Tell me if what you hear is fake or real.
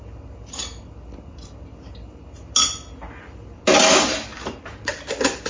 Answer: real